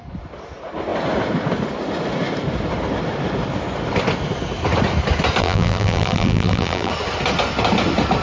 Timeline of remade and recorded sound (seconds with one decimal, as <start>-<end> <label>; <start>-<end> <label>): 0.0-5.4 recorded; 5.4-6.9 remade; 6.9-8.2 recorded